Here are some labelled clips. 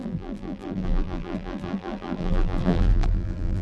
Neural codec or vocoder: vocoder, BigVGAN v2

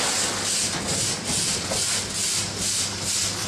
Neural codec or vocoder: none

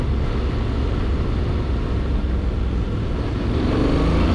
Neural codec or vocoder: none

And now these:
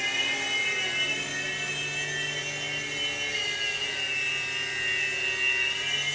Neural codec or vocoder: none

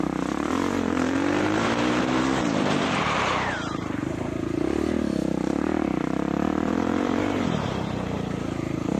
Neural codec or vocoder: vocoder, BigVGAN v2